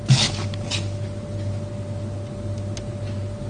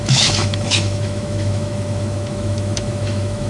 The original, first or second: first